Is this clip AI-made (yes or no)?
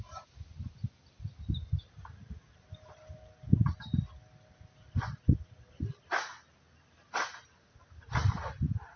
no